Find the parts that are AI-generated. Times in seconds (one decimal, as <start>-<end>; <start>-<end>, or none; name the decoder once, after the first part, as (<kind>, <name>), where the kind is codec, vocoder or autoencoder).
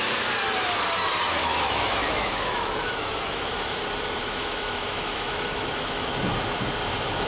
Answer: 1.4-3.8 (autoencoder, DAC-VAE); 4.2-6.1